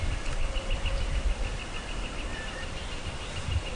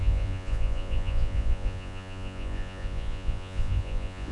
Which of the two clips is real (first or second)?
first